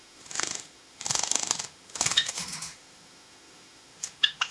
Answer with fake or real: fake